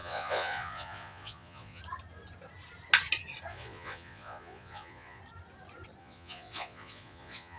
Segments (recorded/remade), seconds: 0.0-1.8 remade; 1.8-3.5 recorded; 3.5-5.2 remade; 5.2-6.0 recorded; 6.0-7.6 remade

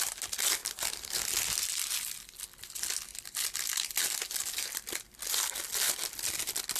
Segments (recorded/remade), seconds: 0.0-6.8 recorded

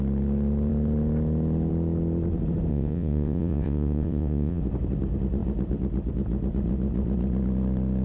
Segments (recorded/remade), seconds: 0.0-2.7 recorded; 2.7-4.6 remade; 4.6-8.0 recorded

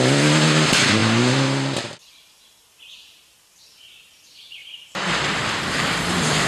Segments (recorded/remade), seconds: 0.0-4.6 recorded; 4.6-5.4 remade; 5.4-6.5 recorded

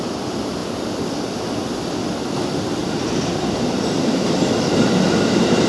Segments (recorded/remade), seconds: 0.0-2.8 recorded; 2.8-4.4 remade; 4.4-5.7 recorded

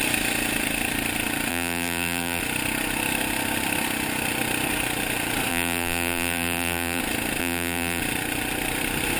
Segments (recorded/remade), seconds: 0.0-1.5 recorded; 1.5-2.4 remade; 2.4-5.5 recorded; 5.5-7.0 remade; 7.0-7.4 recorded; 7.4-8.0 remade; 8.0-9.2 recorded

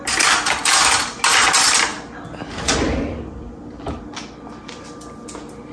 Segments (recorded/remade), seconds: 0.0-5.7 recorded

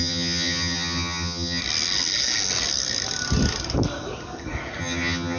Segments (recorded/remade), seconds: 0.0-1.6 remade; 1.6-4.8 recorded; 4.8-5.4 remade